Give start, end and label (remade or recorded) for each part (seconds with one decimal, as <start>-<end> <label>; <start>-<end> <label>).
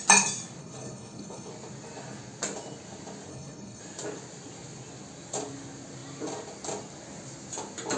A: 0.0-0.6 recorded; 0.6-1.5 remade; 1.5-3.3 recorded; 3.3-3.8 remade; 3.8-8.0 recorded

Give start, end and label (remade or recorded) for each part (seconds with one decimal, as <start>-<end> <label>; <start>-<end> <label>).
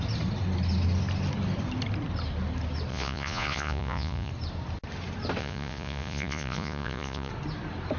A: 0.0-2.9 recorded; 2.9-4.3 remade; 4.3-5.4 recorded; 5.4-7.3 remade; 7.3-8.0 recorded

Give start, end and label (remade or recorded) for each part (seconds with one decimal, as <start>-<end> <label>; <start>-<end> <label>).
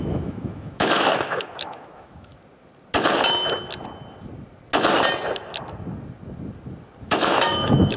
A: 0.0-2.3 remade; 2.3-7.0 recorded; 7.0-8.0 remade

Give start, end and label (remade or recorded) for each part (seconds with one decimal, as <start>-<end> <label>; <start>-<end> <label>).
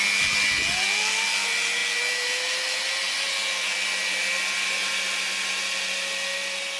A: 0.0-6.8 recorded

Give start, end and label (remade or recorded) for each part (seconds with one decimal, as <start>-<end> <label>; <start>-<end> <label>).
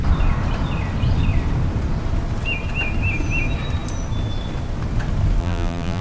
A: 0.0-5.4 recorded; 5.4-6.0 remade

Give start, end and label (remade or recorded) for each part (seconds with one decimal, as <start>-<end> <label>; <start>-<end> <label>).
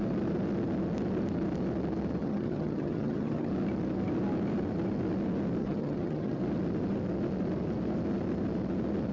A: 0.0-2.2 recorded; 2.2-3.5 remade; 3.5-5.6 recorded; 5.6-6.4 remade; 6.4-9.1 recorded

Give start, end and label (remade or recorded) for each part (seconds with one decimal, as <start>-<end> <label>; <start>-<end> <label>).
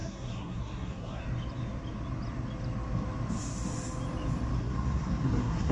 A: 0.0-1.2 remade; 1.2-4.6 recorded; 4.6-5.7 remade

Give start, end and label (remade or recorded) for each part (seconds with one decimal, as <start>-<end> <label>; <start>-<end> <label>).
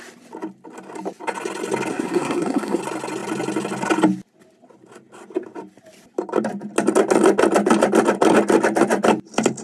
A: 0.0-1.9 recorded; 1.9-2.8 remade; 2.8-9.6 recorded